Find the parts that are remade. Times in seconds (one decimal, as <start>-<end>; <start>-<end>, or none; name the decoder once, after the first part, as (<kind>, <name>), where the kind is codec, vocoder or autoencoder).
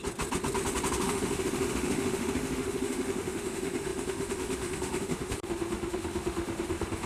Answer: 0.9-7.1 (autoencoder, DAC-VAE)